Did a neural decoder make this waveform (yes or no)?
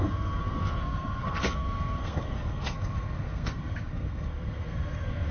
yes